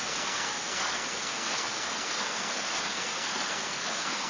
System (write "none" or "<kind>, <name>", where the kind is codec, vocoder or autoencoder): codec, SNAC